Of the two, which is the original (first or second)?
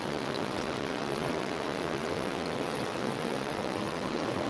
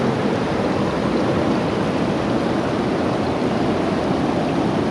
second